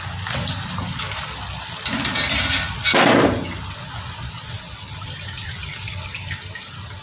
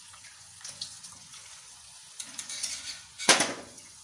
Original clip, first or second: first